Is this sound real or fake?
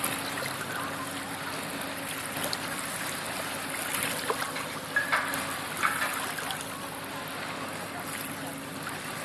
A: real